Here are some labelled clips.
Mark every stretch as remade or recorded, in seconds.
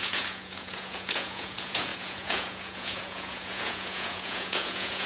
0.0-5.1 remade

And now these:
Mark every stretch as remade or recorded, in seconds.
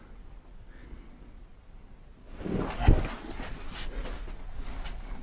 0.0-5.2 recorded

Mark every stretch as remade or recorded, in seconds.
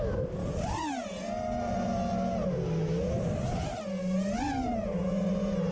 0.0-5.7 recorded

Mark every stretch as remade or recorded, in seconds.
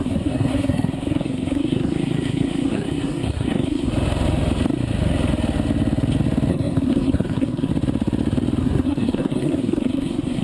0.0-3.9 remade; 3.9-6.5 recorded; 6.5-7.7 remade; 7.7-8.6 recorded; 8.6-10.4 remade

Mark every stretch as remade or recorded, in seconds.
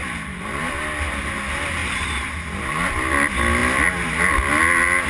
0.0-5.1 recorded